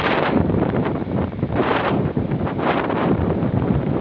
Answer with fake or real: fake